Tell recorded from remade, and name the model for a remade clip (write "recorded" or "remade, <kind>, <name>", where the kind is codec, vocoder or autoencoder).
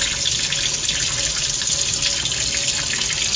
recorded